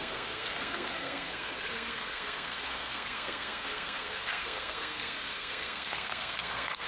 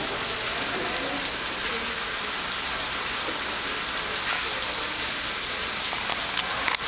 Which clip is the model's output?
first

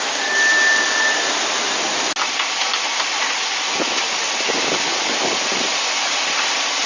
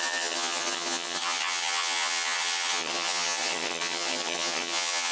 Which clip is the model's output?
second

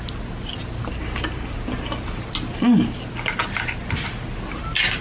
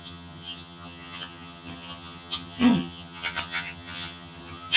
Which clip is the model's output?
second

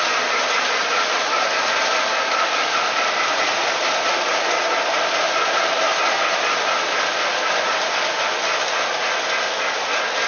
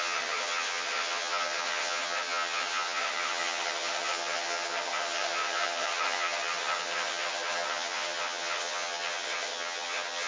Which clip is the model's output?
second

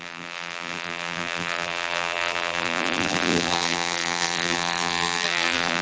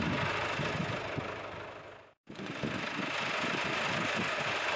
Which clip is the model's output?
first